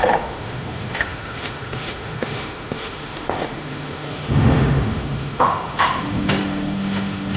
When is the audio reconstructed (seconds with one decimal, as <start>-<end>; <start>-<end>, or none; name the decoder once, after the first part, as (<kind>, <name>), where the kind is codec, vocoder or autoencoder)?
0.0-7.4 (autoencoder, DAC-VAE)